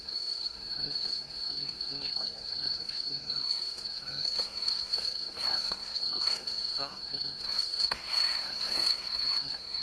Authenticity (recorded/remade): remade